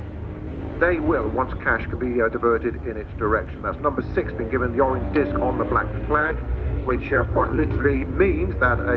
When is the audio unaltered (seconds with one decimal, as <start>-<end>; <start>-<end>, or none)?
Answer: 0.0-6.2; 8.1-9.0